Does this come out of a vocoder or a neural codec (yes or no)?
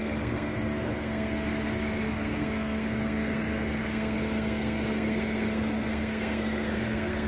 yes